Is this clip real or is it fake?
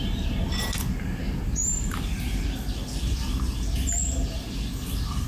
real